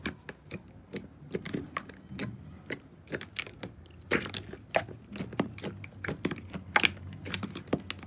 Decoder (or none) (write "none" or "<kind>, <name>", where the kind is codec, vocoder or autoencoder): none